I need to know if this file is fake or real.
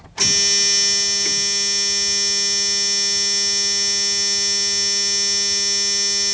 real